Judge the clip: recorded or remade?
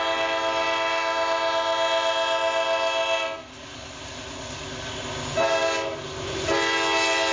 recorded